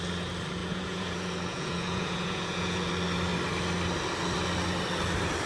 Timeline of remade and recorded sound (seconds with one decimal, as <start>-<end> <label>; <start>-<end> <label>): 0.0-0.6 recorded; 0.6-2.9 remade; 2.9-5.5 recorded